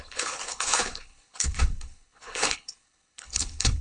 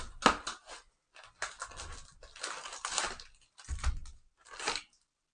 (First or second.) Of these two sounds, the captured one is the second